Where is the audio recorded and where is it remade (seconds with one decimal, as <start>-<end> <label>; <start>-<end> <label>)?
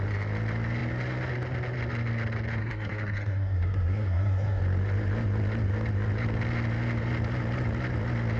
0.0-2.6 recorded; 2.6-4.6 remade; 4.6-8.4 recorded